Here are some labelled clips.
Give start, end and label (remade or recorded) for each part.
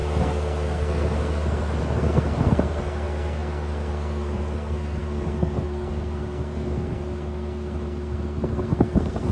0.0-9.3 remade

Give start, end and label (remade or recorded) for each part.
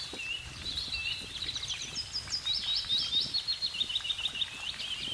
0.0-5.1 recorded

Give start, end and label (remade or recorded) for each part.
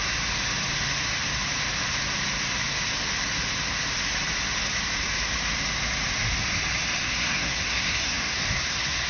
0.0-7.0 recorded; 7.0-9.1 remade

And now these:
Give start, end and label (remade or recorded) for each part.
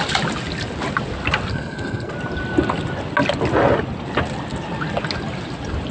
0.0-1.5 recorded; 1.5-2.1 remade; 2.1-5.9 recorded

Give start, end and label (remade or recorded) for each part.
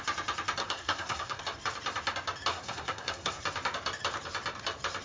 0.0-0.6 recorded; 0.6-1.4 remade; 1.4-2.5 recorded; 2.5-3.4 remade; 3.4-5.0 recorded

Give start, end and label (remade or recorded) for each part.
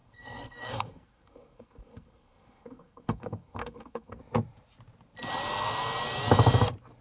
0.0-4.2 remade; 4.2-7.0 recorded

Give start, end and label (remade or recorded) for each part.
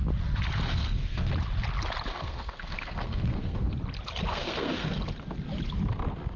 0.0-0.7 recorded; 0.7-1.3 remade; 1.3-2.1 recorded; 2.1-3.7 remade; 3.7-4.3 recorded; 4.3-5.0 remade; 5.0-6.4 recorded